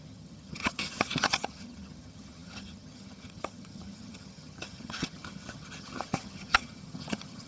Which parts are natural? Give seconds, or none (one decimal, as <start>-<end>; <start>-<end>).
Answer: none